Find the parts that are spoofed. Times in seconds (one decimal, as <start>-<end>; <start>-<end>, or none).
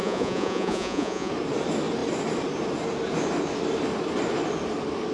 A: 0.0-1.3